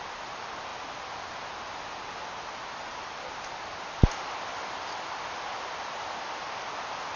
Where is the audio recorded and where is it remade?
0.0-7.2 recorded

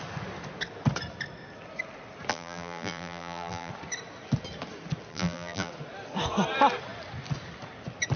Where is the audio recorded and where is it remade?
0.0-2.3 recorded; 2.3-3.7 remade; 3.7-5.1 recorded; 5.1-5.7 remade; 5.7-8.2 recorded

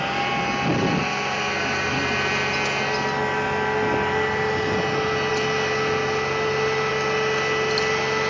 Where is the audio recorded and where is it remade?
0.0-8.3 recorded

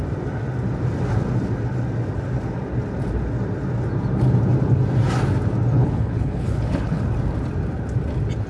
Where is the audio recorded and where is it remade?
0.0-5.7 recorded; 5.7-7.0 remade; 7.0-8.5 recorded